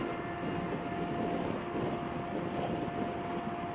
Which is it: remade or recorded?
recorded